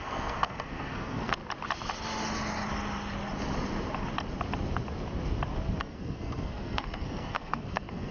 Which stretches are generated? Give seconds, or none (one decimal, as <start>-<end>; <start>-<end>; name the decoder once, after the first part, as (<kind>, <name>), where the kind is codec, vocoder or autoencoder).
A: 0.0-1.4 (codec, SNAC); 5.8-8.1